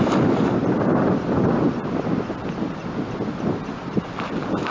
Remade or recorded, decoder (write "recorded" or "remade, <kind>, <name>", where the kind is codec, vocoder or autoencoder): recorded